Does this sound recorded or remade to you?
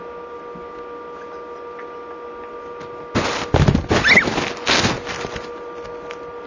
recorded